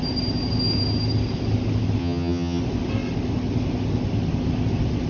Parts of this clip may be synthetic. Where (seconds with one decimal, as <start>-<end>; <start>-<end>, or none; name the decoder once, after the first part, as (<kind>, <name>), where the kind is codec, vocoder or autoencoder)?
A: 2.0-2.6 (vocoder, HiFi-GAN)